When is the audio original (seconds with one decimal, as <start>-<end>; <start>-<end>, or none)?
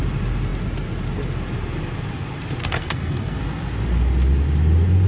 0.0-2.6; 3.4-5.1